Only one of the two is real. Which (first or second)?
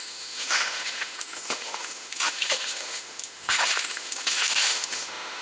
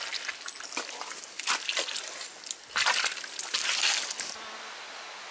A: second